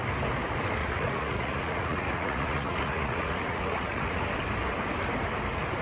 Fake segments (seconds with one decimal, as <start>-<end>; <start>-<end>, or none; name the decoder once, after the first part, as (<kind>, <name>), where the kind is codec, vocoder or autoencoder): 0.8-4.3 (vocoder, Vocos)